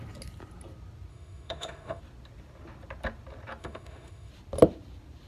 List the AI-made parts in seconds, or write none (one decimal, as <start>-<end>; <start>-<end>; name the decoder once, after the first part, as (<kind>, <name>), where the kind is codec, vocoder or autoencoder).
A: 1.1-2.0 (autoencoder, DAC-VAE); 3.6-4.3